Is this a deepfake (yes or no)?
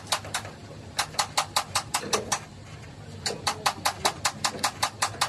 no